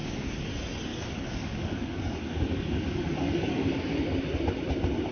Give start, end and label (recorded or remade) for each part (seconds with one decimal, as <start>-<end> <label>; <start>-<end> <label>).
0.0-0.5 remade; 0.5-0.9 recorded; 0.9-4.0 remade; 4.0-5.1 recorded